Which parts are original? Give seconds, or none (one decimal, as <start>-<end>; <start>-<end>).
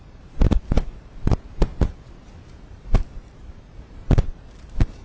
1.7-2.5